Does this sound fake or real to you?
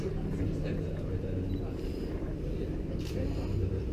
real